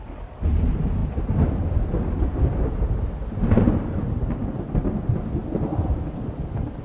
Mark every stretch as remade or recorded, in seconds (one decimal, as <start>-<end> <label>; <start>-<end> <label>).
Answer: 0.0-6.8 recorded